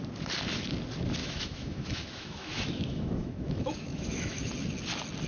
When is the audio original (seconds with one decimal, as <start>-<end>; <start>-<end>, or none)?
0.0-1.2; 4.4-5.3